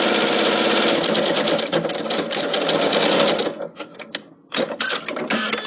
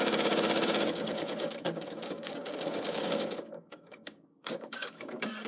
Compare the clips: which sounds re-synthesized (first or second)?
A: second